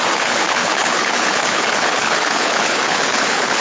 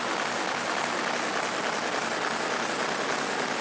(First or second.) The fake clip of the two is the first